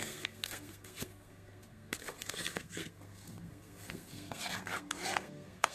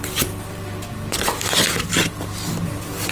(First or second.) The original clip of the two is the second